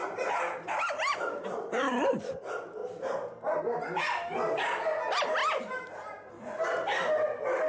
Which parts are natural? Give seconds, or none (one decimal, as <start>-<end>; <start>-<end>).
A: 2.1-2.8; 3.6-7.7